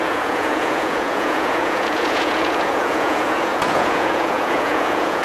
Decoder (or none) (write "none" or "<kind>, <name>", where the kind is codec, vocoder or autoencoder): vocoder, Vocos